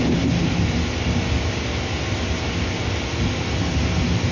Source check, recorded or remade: recorded